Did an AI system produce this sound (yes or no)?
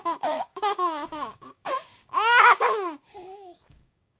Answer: yes